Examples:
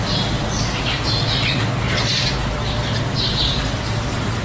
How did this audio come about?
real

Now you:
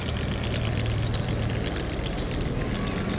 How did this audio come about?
fake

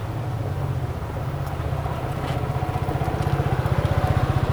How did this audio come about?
real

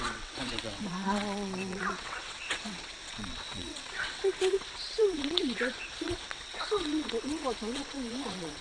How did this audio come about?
fake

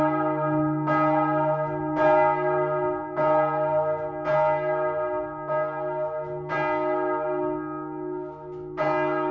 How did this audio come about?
real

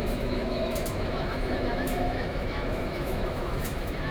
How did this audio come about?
fake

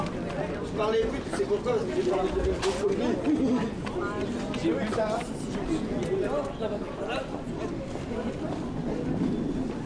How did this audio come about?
real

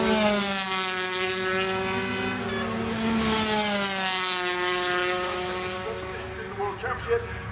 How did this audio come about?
real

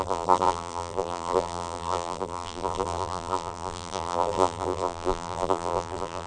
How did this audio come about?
fake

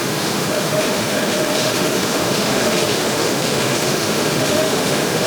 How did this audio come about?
fake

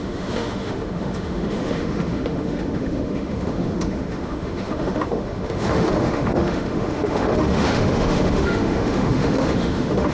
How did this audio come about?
fake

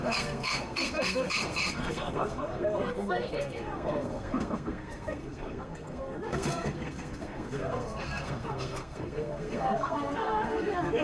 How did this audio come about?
fake